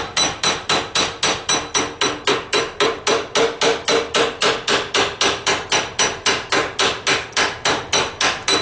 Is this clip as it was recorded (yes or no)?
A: yes